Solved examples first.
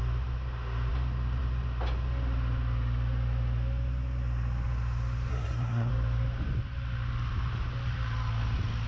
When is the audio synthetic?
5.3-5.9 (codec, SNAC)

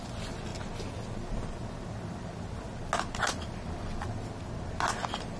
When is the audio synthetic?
none

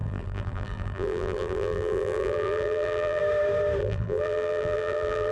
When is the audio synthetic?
0.0-3.2 (vocoder, BigVGAN v2); 3.8-5.3

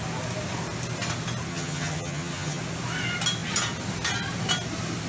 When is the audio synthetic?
1.5-2.6 (vocoder, HiFi-GAN)

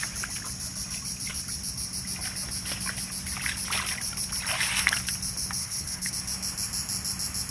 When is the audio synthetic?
5.6-6.1 (codec, HILCodec)